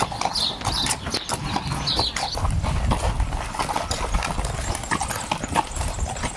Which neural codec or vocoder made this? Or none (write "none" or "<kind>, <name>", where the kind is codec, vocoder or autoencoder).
none